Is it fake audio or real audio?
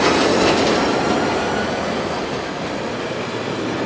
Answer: real